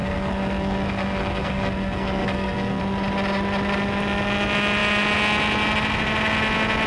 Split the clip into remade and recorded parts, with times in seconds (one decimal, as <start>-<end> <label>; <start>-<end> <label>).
0.0-2.8 remade; 2.8-6.9 recorded